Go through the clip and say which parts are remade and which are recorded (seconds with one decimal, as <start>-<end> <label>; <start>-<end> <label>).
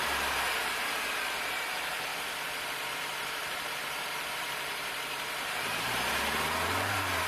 0.0-2.1 remade; 2.1-2.9 recorded; 2.9-7.3 remade